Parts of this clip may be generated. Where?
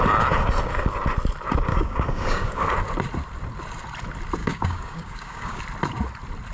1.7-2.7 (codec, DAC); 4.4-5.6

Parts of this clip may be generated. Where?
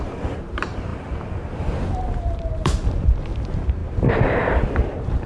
0.0-5.3 (vocoder, BigVGAN v2)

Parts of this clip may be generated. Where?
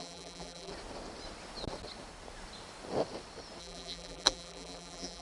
0.0-0.7 (vocoder, BigVGAN v2); 3.6-5.2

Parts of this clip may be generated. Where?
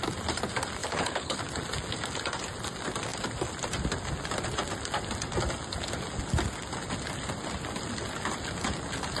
0.8-1.4 (codec, HILCodec)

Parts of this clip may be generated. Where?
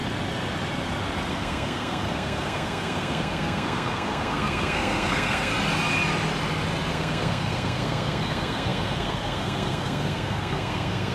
1.3-5.5 (codec, SNAC); 6.9-11.1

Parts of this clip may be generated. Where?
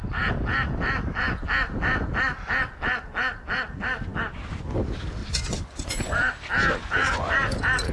5.2-6.2 (vocoder, Vocos); 6.8-7.5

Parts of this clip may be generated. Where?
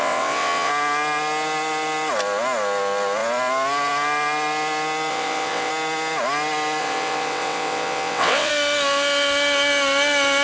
0.0-0.7 (vocoder, WaveNeXt); 5.1-5.7; 6.8-8.5